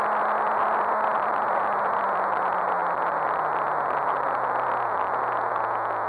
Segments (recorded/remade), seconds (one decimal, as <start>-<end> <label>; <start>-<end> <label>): 0.0-6.1 recorded